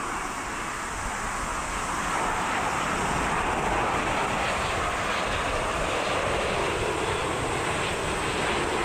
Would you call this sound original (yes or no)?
yes